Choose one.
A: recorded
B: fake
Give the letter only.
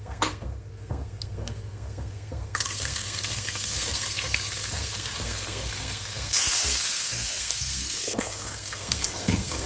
B